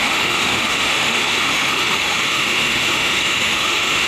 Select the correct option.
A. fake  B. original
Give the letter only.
A